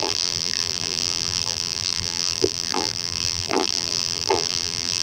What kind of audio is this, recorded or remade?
remade